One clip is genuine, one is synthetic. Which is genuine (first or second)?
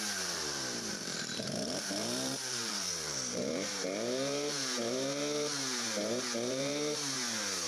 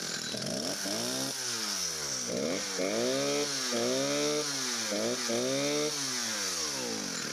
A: second